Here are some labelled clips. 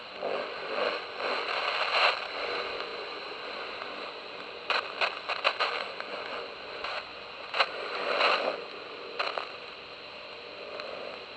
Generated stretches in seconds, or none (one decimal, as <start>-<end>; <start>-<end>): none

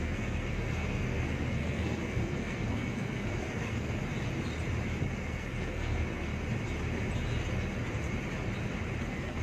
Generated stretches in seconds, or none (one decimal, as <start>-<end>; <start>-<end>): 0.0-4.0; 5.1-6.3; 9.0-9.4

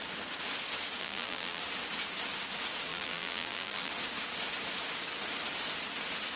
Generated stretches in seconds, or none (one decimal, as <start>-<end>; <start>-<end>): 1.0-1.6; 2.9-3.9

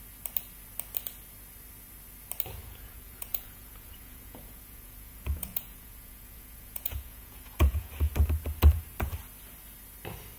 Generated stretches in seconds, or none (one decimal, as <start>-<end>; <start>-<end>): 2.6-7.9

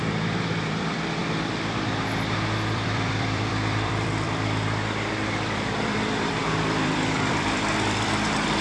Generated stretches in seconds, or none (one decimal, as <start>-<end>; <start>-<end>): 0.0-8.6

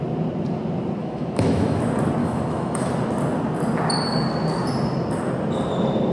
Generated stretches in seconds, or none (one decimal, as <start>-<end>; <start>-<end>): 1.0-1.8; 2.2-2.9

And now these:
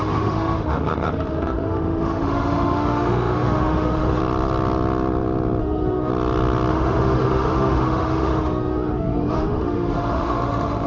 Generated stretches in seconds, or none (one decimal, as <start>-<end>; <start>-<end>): 0.0-4.2; 5.6-6.1; 6.7-10.9

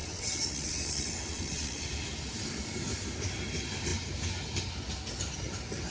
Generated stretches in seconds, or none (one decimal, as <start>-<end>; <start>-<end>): 0.0-1.9